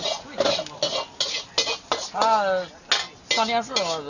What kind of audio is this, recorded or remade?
recorded